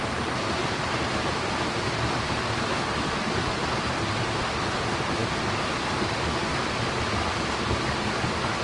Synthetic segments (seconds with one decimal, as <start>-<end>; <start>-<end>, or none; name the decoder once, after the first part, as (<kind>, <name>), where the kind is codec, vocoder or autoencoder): none